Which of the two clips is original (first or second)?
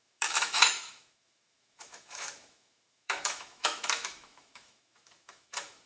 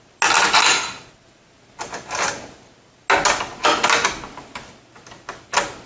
second